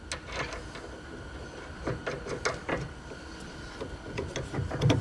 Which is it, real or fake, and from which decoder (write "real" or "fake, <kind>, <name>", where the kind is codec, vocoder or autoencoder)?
real